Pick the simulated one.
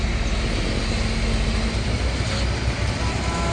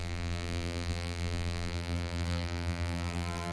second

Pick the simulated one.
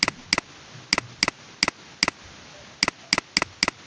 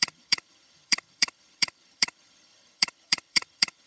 second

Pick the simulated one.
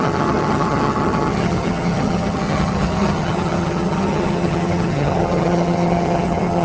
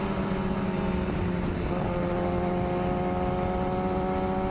first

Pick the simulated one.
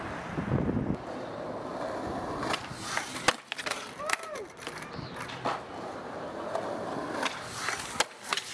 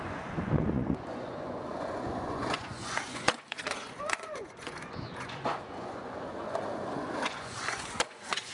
second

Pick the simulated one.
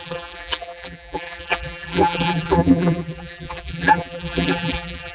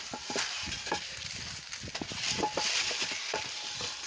first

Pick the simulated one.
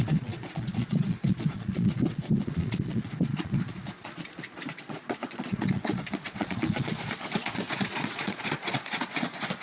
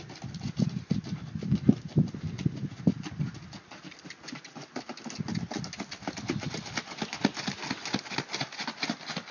first